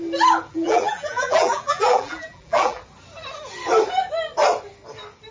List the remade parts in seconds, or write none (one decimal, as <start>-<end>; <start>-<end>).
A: 0.5-2.8